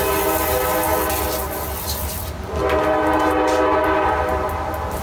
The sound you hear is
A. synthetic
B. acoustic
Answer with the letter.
B